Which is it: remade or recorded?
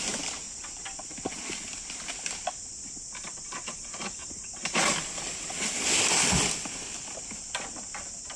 recorded